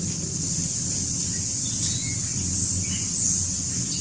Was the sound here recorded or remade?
recorded